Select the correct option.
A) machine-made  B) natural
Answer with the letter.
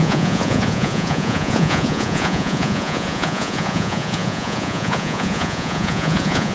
A